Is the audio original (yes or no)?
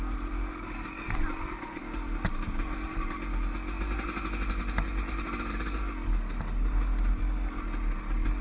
yes